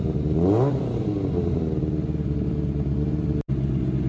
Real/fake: real